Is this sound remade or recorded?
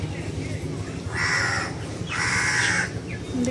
recorded